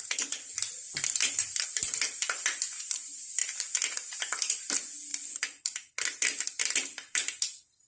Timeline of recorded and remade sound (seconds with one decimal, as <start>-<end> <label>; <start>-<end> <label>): 0.0-7.9 recorded